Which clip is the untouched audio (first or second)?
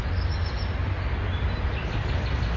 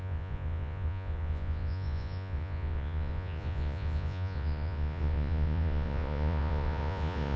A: first